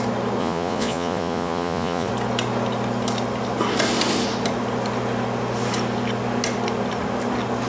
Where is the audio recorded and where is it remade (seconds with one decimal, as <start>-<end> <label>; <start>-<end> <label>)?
0.0-0.4 recorded; 0.4-2.1 remade; 2.1-7.7 recorded